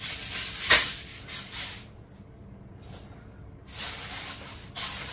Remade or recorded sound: recorded